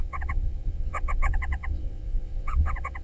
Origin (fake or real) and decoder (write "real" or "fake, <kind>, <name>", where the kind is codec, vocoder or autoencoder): fake, vocoder, WaveNeXt